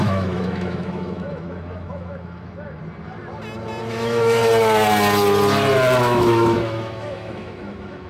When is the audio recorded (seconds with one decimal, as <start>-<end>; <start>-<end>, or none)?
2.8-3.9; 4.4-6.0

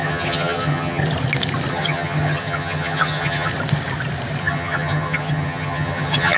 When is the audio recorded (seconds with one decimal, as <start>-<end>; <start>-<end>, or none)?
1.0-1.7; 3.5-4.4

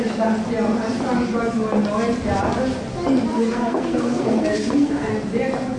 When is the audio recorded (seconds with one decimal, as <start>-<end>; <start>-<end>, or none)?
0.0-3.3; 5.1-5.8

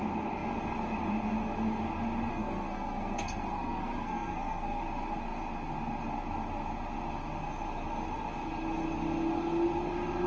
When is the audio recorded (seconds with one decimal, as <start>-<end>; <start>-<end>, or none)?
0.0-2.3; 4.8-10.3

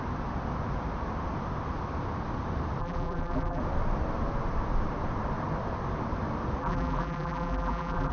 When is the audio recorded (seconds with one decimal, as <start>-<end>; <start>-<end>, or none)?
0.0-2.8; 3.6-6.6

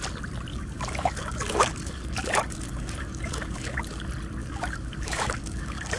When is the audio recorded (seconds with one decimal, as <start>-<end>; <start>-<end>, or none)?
0.0-0.5; 4.0-4.4

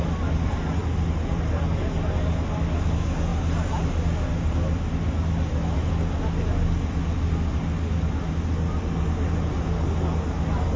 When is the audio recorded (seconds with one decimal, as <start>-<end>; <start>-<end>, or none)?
0.0-10.8

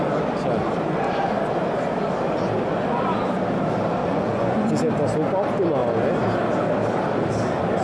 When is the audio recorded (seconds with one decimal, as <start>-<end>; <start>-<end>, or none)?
0.0-4.0; 4.7-7.8